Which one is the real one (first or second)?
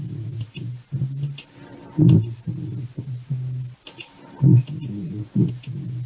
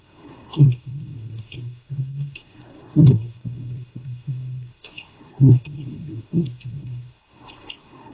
first